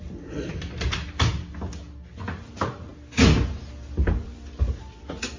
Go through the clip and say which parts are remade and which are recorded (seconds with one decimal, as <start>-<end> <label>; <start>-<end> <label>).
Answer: 0.0-1.3 remade; 1.3-2.1 recorded; 2.1-2.9 remade; 2.9-4.1 recorded; 4.1-5.4 remade